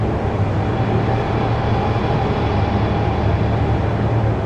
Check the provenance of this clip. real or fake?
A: real